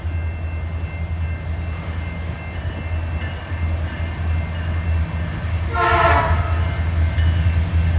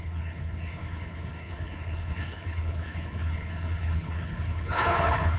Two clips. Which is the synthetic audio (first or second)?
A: second